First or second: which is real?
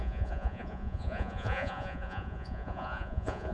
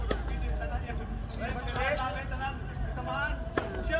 second